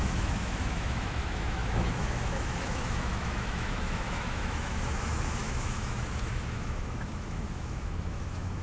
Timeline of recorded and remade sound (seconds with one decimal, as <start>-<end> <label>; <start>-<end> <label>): 0.0-8.6 remade